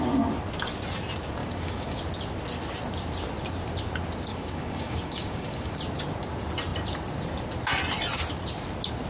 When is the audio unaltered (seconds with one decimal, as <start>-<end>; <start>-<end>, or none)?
0.0-1.4; 2.0-4.3; 5.8-9.1